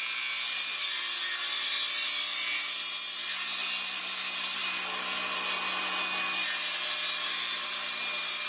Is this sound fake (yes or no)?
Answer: no